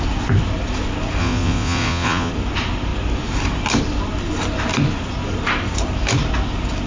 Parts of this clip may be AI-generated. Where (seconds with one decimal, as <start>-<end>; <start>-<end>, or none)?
1.2-2.3